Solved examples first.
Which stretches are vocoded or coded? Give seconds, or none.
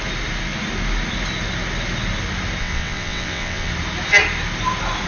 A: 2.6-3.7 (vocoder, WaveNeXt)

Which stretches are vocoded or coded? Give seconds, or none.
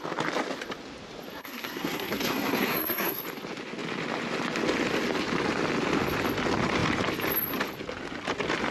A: 1.3-3.2 (codec, SNAC)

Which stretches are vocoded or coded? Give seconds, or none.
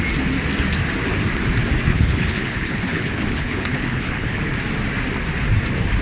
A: 1.9-4.5 (codec, HILCodec)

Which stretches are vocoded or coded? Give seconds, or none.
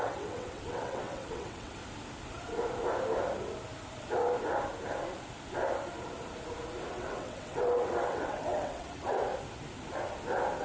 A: 0.0-1.8 (vocoder, WaveNeXt); 6.9-9.3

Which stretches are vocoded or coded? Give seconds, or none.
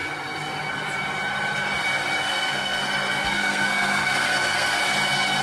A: 2.3-2.8 (codec, SNAC); 3.2-4.8